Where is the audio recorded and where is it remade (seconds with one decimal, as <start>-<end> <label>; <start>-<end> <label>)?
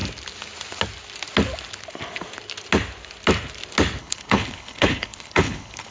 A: 0.0-4.0 recorded; 4.0-5.9 remade